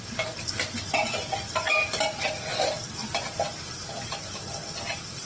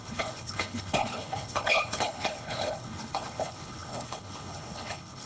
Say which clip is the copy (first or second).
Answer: second